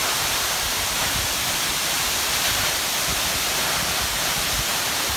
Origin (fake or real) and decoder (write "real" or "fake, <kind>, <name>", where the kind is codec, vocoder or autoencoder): fake, vocoder, BigVGAN v2